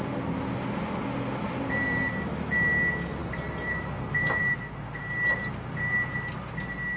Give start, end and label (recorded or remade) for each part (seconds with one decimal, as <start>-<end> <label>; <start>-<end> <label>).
0.0-3.2 recorded; 3.2-4.6 remade; 4.6-5.3 recorded; 5.3-6.5 remade; 6.5-7.0 recorded

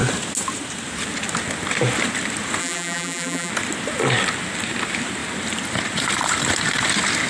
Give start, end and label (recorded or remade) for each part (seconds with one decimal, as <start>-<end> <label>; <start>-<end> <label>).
0.0-2.6 recorded; 2.6-3.5 remade; 3.5-7.3 recorded

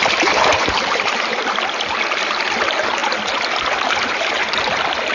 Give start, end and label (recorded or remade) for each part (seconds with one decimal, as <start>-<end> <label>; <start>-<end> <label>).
0.0-0.5 recorded; 0.5-1.4 remade; 1.4-5.1 recorded

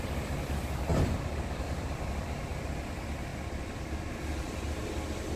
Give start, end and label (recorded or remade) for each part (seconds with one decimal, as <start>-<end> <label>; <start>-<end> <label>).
0.0-3.3 recorded; 3.3-4.1 remade; 4.1-5.4 recorded

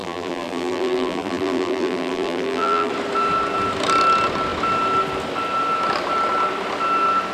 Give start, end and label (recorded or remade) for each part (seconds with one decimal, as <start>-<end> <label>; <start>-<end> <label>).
0.0-2.9 remade; 2.9-7.3 recorded

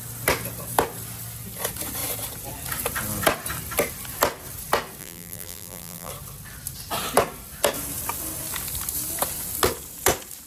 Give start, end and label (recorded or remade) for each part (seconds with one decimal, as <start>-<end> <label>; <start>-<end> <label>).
0.0-5.0 recorded; 5.0-6.1 remade; 6.1-10.5 recorded